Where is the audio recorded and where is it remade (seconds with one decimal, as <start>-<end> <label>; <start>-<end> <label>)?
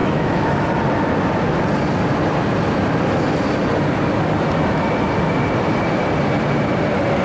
0.0-0.7 remade; 0.7-7.2 recorded